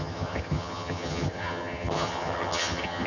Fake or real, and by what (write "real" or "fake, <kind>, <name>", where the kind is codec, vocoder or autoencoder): fake, vocoder, HiFi-GAN